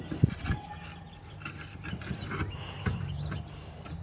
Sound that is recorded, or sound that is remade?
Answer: recorded